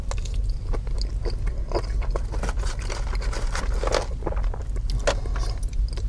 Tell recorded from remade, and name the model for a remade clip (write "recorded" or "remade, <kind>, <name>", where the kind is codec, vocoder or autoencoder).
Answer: recorded